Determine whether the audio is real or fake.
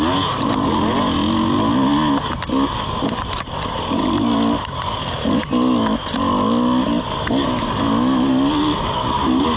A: real